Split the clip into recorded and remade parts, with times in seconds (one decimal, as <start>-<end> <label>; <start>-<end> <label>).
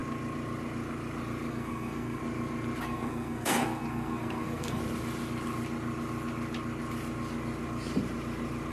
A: 0.0-1.5 recorded; 1.5-2.2 remade; 2.2-2.8 recorded; 2.8-4.8 remade; 4.8-8.7 recorded